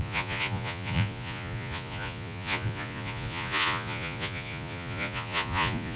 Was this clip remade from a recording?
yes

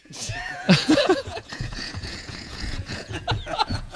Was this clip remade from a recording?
yes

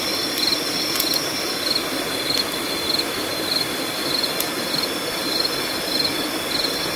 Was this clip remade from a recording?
no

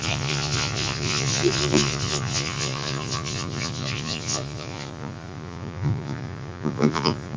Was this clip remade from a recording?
yes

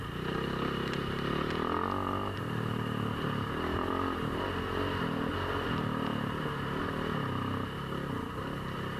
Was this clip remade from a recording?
no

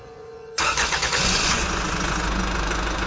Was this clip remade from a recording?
yes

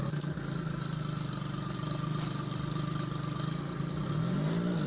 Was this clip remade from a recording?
no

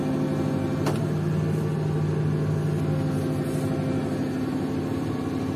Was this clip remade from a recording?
no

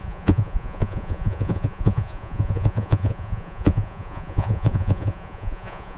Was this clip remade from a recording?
yes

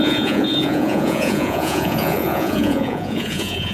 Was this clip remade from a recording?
yes